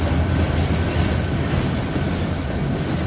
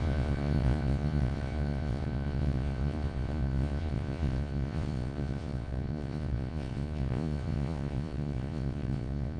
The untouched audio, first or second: first